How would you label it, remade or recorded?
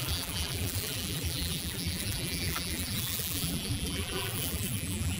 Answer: remade